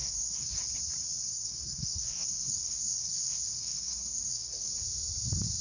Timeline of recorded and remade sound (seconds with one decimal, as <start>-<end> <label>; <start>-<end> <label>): 0.0-0.6 remade; 0.6-1.3 recorded; 1.3-4.7 remade; 4.7-5.6 recorded